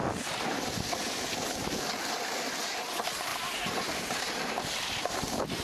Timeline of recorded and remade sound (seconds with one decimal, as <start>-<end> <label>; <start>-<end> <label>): 0.0-3.3 recorded; 3.3-4.4 remade; 4.4-5.6 recorded